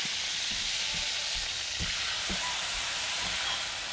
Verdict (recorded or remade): recorded